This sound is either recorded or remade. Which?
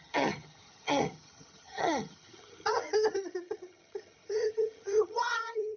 remade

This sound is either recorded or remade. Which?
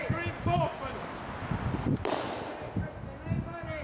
recorded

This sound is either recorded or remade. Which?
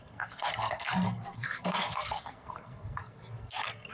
remade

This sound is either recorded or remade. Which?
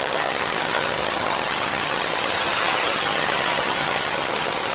remade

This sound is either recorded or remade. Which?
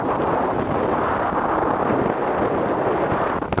recorded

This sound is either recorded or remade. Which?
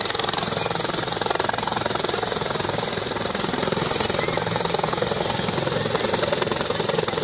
remade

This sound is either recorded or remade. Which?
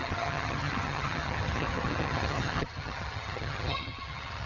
remade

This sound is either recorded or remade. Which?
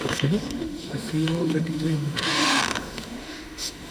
remade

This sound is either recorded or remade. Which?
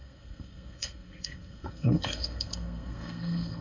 remade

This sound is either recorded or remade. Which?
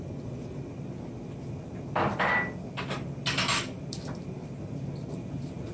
recorded